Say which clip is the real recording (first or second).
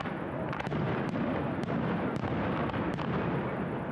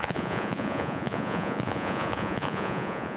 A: first